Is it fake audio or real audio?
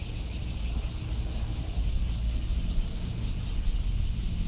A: real